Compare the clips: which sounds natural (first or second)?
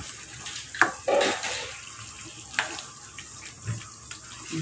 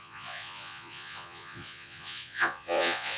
first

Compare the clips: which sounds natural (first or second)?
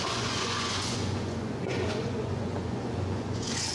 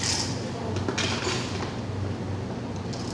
second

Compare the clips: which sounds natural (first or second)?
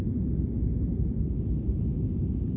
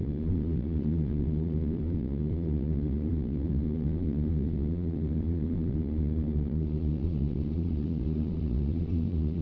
first